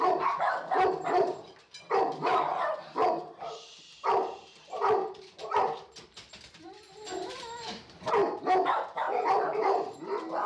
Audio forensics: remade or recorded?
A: remade